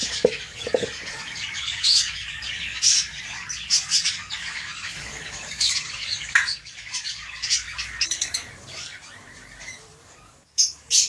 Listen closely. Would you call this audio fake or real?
fake